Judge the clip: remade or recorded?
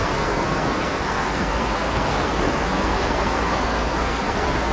remade